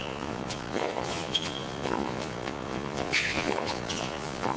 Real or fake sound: fake